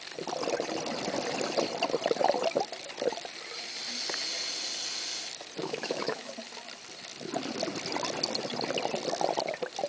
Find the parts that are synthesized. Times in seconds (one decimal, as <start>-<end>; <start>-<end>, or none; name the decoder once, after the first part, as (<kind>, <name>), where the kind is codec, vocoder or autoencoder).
5.6-6.3 (autoencoder, DAC-VAE)